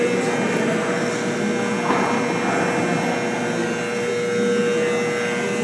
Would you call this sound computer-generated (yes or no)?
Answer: no